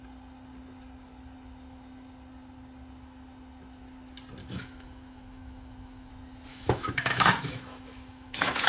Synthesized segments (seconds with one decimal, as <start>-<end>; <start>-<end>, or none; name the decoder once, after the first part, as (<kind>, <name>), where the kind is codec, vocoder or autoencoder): 4.4-6.1 (autoencoder, DAC-VAE); 6.5-8.7

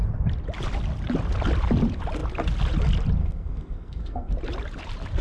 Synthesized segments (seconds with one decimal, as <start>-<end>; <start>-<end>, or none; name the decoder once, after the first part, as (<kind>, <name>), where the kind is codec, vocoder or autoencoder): 3.2-4.3 (codec, SNAC)

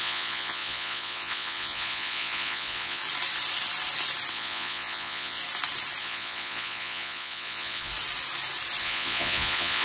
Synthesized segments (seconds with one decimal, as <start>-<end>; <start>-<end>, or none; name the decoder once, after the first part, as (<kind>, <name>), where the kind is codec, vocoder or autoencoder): 0.0-3.0 (vocoder, Vocos); 4.3-5.4; 6.0-7.9; 8.8-9.8

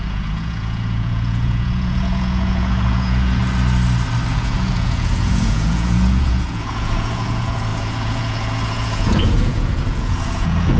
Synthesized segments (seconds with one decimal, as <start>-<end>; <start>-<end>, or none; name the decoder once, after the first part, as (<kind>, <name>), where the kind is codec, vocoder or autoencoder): 0.0-3.4 (vocoder, Vocos); 4.3-10.8